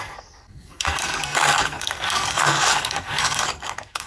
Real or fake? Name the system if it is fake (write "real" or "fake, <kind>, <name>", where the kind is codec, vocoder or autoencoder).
fake, codec, SNAC